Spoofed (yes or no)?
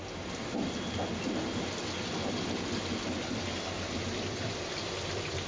no